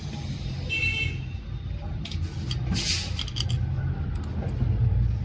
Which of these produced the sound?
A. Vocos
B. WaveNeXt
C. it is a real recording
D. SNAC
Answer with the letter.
C